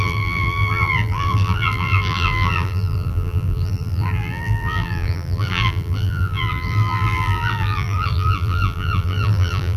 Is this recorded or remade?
remade